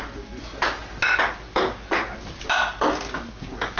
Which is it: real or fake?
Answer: real